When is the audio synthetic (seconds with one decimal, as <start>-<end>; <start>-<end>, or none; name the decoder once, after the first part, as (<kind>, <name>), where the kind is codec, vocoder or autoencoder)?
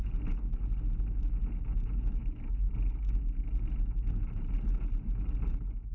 none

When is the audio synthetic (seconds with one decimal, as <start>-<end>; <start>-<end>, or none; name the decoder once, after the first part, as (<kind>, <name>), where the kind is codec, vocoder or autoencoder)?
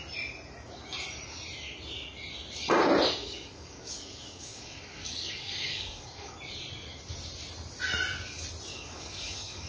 3.2-6.4 (codec, DAC); 8.7-9.7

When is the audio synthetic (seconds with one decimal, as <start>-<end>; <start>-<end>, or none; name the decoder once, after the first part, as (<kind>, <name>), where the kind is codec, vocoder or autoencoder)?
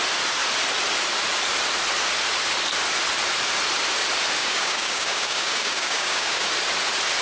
4.4-6.4 (codec, DAC)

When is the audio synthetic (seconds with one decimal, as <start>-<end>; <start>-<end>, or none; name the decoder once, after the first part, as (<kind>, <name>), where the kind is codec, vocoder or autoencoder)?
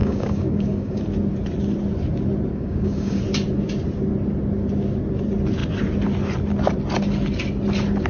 0.0-1.0 (codec, DAC); 2.5-3.2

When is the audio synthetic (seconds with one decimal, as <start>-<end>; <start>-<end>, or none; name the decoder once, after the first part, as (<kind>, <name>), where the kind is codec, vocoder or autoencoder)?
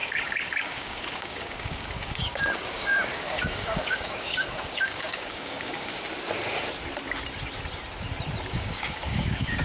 0.0-6.1 (codec, DAC); 8.5-9.6